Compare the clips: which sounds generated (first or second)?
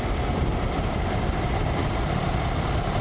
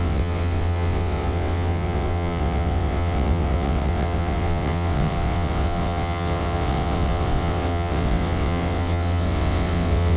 second